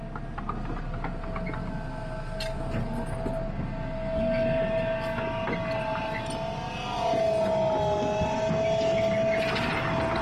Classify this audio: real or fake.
real